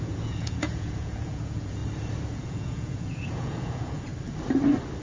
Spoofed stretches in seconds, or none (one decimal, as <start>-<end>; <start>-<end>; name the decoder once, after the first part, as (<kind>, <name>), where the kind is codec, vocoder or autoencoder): 0.0-1.8 (vocoder, Vocos); 2.3-4.1